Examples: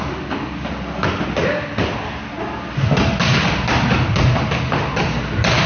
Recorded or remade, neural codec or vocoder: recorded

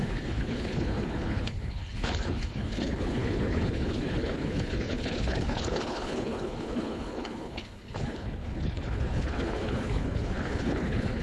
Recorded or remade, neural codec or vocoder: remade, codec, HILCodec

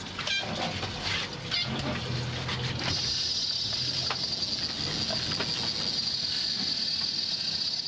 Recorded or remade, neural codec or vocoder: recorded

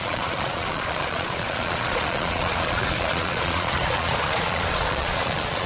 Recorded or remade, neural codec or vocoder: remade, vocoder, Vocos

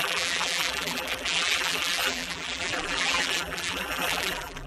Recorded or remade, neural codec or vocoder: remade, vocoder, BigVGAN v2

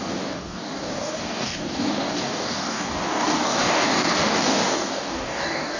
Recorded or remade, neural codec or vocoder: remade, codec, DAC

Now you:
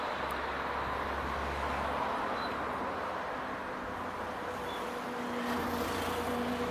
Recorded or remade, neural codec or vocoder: remade, vocoder, BigVGAN v2